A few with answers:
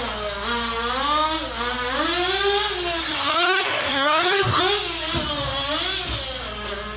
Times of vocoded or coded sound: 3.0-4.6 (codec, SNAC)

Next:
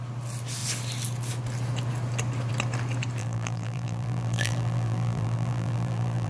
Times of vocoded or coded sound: 3.2-6.3 (vocoder, BigVGAN v2)

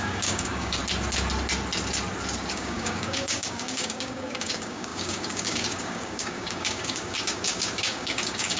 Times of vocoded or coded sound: 0.0-0.8 (codec, DAC); 2.5-8.6

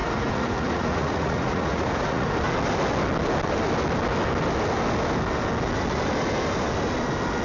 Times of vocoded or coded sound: 0.0-2.3 (vocoder, Vocos)

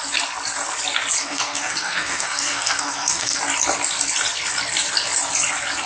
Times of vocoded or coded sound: 1.2-3.4 (codec, SNAC)

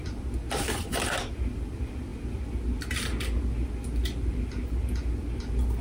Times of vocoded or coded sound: none